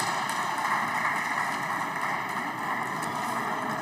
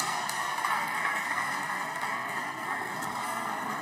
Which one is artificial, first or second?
second